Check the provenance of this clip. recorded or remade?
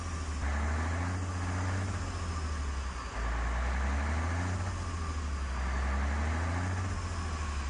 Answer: recorded